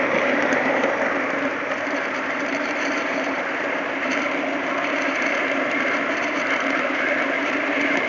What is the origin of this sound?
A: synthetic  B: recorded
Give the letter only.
A